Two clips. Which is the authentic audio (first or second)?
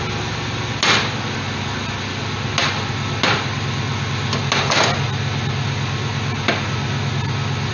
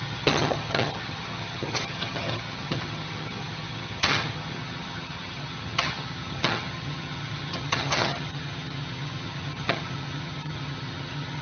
first